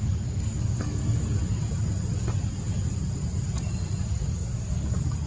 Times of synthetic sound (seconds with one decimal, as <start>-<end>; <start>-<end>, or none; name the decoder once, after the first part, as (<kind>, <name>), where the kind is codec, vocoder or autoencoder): 0.0-1.0 (codec, DAC); 4.2-5.3

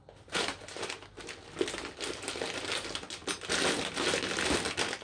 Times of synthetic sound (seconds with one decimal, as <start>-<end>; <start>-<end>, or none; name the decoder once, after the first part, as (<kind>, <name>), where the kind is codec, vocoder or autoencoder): none

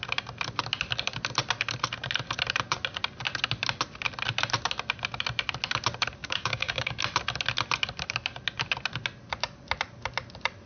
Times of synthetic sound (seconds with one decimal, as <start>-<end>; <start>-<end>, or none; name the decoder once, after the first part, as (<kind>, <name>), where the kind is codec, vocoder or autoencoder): 6.2-7.0 (codec, DAC)

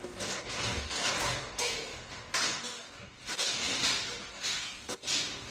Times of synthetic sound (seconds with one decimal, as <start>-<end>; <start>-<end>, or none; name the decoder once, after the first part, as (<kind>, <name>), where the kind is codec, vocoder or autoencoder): 0.0-3.8 (codec, DAC); 4.3-5.5

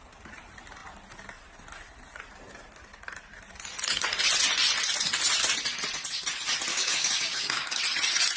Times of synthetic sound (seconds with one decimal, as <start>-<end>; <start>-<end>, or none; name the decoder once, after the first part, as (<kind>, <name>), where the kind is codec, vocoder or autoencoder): 6.7-7.8 (codec, DAC)